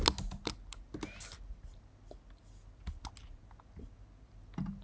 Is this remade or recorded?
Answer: recorded